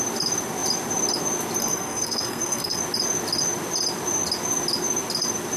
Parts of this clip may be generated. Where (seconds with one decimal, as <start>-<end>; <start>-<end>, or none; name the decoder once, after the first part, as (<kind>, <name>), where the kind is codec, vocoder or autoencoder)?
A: 1.6-2.8 (codec, SNAC)